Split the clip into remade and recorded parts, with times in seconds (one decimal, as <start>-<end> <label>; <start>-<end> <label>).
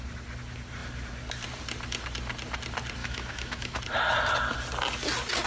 0.0-3.0 recorded; 3.0-3.8 remade; 3.8-5.5 recorded